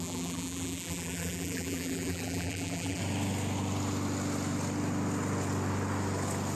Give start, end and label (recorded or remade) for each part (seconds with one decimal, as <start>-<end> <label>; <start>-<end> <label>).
0.0-3.0 remade; 3.0-6.6 recorded